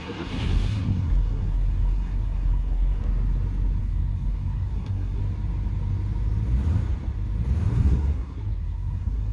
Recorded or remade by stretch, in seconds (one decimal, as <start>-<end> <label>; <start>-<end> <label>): 0.0-3.0 remade; 3.0-3.8 recorded; 3.8-5.2 remade; 5.2-7.7 recorded; 7.7-9.3 remade